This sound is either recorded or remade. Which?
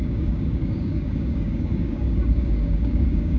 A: remade